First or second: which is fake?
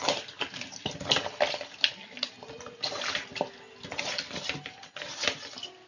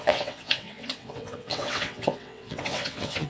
second